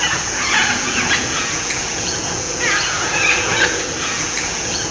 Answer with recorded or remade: remade